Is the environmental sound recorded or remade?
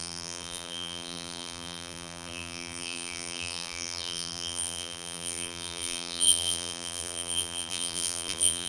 remade